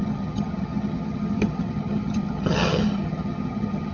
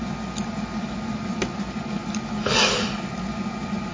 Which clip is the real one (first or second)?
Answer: second